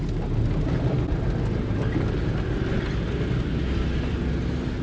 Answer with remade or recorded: recorded